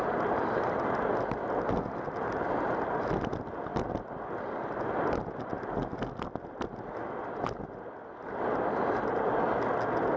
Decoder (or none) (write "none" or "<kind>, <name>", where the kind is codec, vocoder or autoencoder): none